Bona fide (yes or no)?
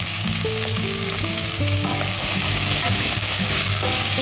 no